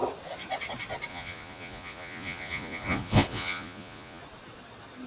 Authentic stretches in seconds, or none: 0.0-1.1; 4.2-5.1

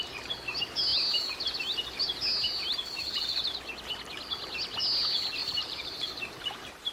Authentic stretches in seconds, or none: 0.0-5.4